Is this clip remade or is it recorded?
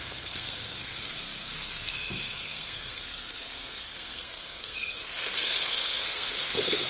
remade